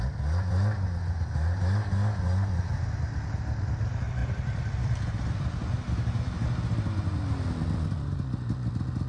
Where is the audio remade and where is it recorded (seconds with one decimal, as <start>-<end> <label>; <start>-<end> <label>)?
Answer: 0.0-4.2 recorded; 4.2-5.7 remade; 5.7-9.1 recorded